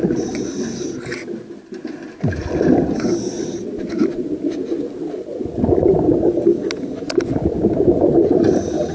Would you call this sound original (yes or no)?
yes